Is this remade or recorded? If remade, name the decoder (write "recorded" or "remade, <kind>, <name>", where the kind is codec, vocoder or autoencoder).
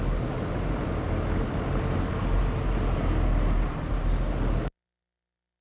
recorded